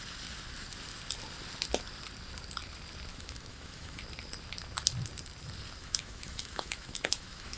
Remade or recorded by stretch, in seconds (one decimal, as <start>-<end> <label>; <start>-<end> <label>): 0.0-3.1 recorded; 3.1-4.0 remade; 4.0-5.8 recorded; 5.8-7.6 remade